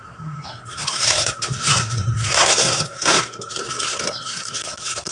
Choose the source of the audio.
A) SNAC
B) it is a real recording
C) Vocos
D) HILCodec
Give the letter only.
A